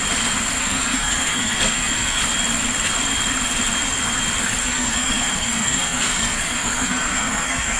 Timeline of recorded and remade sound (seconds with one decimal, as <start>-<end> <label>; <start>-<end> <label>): 0.0-0.6 recorded; 0.6-2.2 remade; 2.2-4.6 recorded; 4.6-7.8 remade